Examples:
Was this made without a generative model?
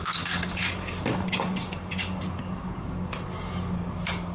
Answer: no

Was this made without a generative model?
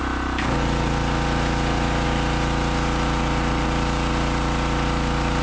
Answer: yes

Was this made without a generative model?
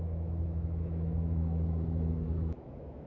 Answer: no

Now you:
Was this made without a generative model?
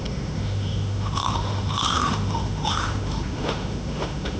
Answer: no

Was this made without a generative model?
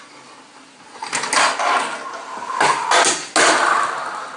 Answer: yes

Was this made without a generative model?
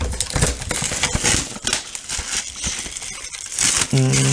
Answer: yes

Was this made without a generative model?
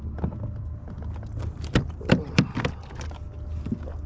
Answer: yes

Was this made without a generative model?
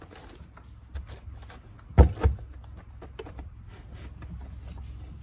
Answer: yes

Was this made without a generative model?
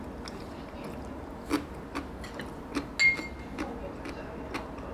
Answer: yes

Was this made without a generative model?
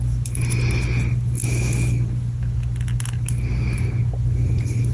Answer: yes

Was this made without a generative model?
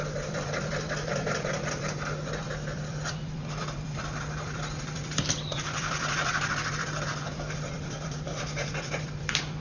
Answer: no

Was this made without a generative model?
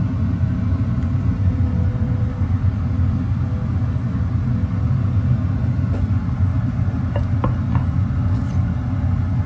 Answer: yes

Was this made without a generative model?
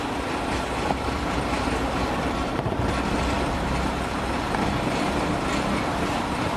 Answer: yes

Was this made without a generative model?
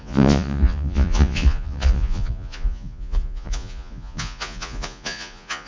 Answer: no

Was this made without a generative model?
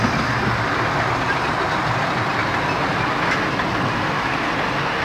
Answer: yes